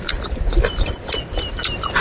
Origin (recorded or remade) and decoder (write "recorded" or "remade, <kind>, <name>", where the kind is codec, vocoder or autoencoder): recorded